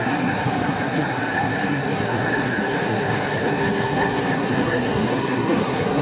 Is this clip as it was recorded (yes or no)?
no